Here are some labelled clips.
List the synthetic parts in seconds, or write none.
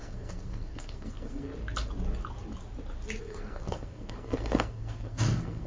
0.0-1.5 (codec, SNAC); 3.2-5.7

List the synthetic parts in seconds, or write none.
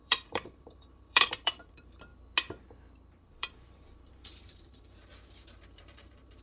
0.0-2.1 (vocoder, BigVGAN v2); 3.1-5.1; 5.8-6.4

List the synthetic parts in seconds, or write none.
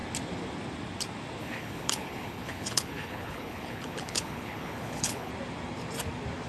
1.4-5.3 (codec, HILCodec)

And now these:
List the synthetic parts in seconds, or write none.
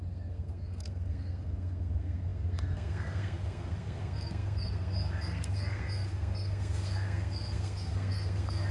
0.0-8.7 (codec, SNAC)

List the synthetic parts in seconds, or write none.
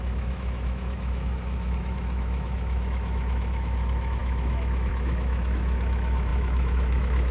0.0-7.3 (autoencoder, DAC-VAE)